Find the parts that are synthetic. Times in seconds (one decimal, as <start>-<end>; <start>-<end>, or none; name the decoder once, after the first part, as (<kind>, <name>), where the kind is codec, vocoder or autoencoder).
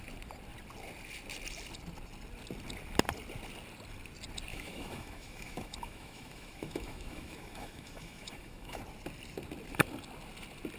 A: 4.5-8.8 (autoencoder, DAC-VAE)